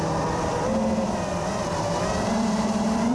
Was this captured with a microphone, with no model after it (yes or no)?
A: no